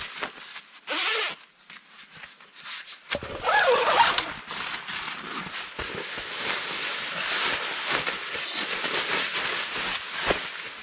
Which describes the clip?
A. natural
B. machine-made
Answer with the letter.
A